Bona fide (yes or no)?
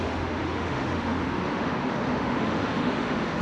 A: no